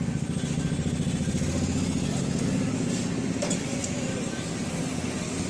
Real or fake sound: real